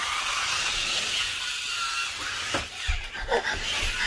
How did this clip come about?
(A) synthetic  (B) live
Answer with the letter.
B